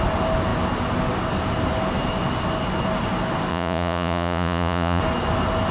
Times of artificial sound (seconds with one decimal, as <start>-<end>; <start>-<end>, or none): 3.5-5.0

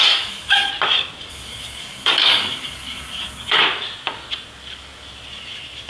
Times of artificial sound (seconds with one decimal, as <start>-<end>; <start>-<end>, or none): 0.0-0.7; 1.3-3.6

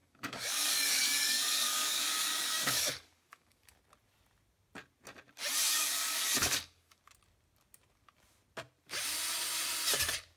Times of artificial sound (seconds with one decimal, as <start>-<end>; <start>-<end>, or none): 0.0-3.8; 5.7-7.0

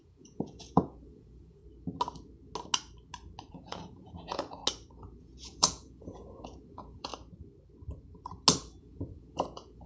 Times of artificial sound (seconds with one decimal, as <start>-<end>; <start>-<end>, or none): 0.0-1.6; 3.5-4.6; 5.2-7.1; 8.8-9.9

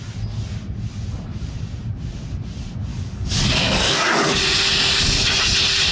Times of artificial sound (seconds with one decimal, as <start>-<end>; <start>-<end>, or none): 2.9-4.4

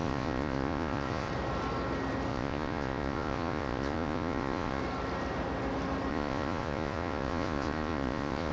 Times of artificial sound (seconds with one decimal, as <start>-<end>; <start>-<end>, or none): 0.0-1.3; 2.3-4.8; 6.1-8.5

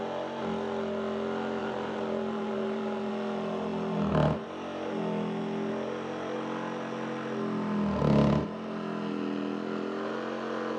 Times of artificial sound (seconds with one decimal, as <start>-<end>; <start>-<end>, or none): 1.6-3.1

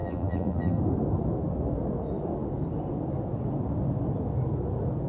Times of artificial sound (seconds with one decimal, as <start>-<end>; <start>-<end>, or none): 0.0-0.8